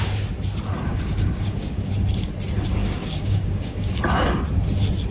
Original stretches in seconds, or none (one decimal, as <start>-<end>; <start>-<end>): 0.0-0.9; 1.9-2.8; 4.0-5.1